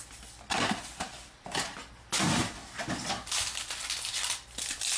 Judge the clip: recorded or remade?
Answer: recorded